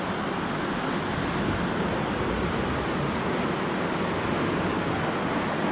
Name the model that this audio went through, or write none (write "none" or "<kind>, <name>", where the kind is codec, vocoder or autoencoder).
none